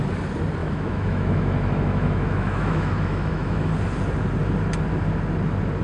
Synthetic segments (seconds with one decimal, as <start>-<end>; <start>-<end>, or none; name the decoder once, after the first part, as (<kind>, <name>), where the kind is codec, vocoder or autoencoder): 0.6-3.7 (autoencoder, DAC-VAE)